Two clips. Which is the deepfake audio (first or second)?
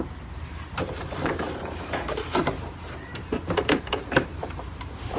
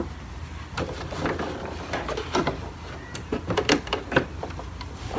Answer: first